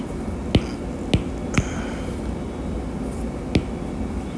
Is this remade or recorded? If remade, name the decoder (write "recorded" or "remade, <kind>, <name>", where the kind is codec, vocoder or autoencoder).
recorded